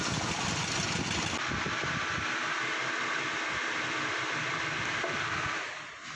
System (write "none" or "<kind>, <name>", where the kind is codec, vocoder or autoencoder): none